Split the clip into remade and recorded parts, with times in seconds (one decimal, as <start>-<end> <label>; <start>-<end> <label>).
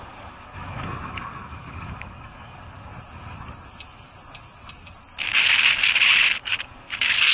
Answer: 0.0-2.9 remade; 2.9-6.4 recorded; 6.4-7.3 remade